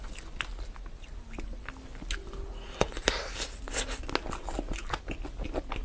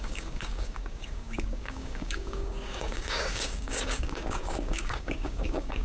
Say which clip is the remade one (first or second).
second